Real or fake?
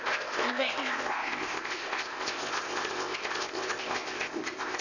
fake